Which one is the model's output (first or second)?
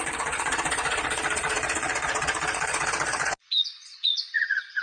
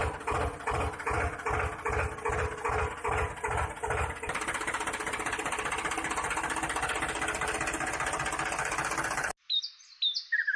first